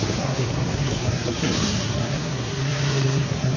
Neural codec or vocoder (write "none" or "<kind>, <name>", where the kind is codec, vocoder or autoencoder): codec, SNAC